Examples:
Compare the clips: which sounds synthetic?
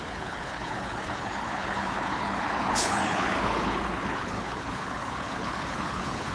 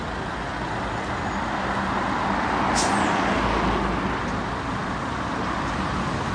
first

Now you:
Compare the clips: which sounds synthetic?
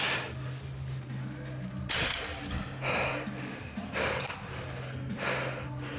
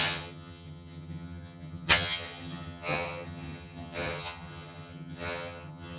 second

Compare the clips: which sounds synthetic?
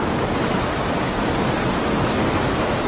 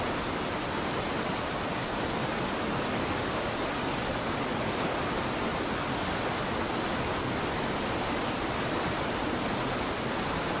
second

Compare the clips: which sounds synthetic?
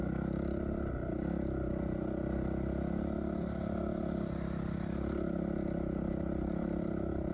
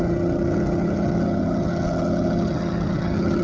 second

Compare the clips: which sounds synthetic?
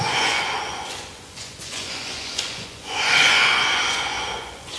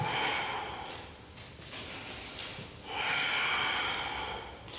first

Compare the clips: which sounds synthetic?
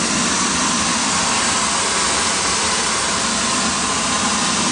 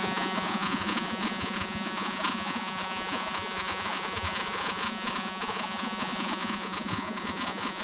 second